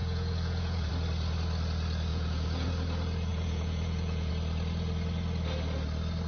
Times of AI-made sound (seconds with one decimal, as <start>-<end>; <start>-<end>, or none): 0.0-0.9; 2.1-2.7; 3.3-4.3